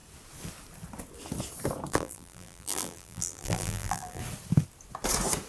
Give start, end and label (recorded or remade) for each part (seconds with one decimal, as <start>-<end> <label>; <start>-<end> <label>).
0.0-1.9 recorded; 1.9-4.2 remade; 4.2-5.5 recorded